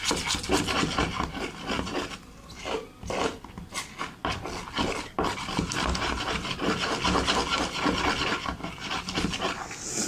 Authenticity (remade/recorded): recorded